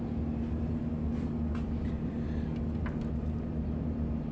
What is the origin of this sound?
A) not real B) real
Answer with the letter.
B